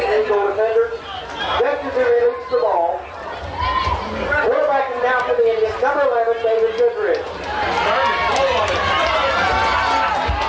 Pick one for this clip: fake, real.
real